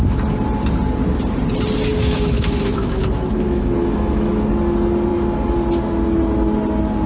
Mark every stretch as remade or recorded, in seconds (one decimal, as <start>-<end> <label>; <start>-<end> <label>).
0.0-1.9 recorded; 1.9-4.4 remade; 4.4-7.1 recorded